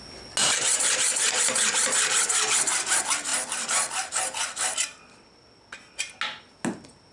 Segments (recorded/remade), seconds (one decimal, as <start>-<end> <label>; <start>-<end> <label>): 0.0-0.4 recorded; 0.4-1.0 remade; 1.0-3.3 recorded; 3.3-5.5 remade; 5.5-7.1 recorded